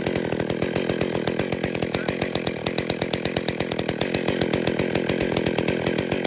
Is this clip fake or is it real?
real